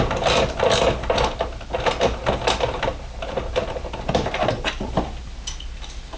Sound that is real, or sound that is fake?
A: real